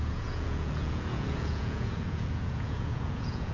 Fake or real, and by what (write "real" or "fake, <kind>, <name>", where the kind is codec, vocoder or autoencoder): fake, vocoder, Vocos